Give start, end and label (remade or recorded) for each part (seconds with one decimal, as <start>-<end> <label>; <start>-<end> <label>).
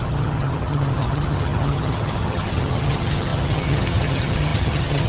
0.0-5.1 remade